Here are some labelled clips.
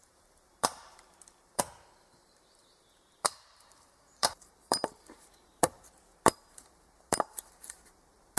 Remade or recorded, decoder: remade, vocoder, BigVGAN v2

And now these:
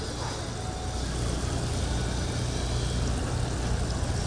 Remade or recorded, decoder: recorded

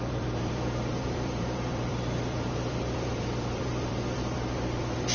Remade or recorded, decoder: remade, vocoder, BigVGAN v2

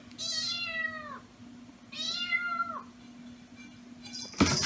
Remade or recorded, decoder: recorded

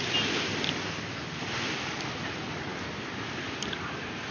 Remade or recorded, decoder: recorded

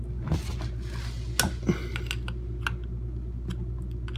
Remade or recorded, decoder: recorded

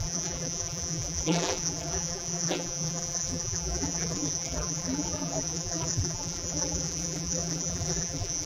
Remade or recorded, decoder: remade, vocoder, BigVGAN v2